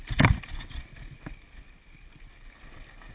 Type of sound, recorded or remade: recorded